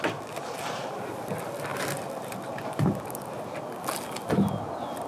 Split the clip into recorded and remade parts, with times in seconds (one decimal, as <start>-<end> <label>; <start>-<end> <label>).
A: 0.0-5.1 recorded